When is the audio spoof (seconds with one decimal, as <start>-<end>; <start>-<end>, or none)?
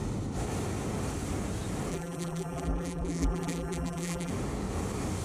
1.9-4.3